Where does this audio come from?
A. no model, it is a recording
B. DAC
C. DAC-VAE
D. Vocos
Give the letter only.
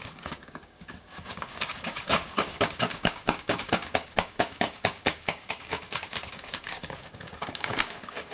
B